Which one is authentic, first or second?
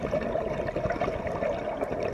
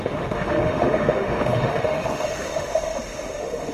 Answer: first